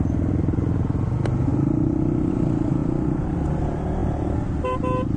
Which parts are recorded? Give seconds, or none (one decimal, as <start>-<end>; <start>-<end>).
0.0-5.2